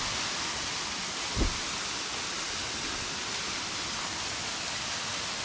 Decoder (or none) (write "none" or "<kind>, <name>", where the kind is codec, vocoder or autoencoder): none